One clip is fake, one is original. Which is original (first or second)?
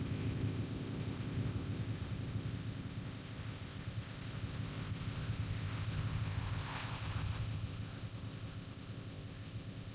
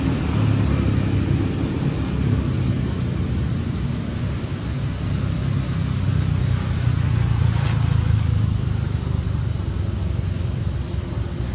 second